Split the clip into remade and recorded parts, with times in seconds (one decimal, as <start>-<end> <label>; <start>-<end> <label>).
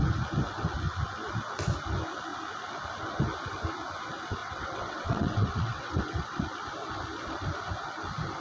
0.0-4.4 recorded; 4.4-6.4 remade; 6.4-8.4 recorded